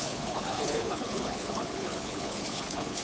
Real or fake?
fake